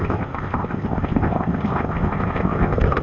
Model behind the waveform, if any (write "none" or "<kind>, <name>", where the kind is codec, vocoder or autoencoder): codec, ZipCodec